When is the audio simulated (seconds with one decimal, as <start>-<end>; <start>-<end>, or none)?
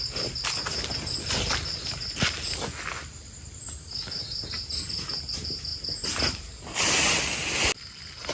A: none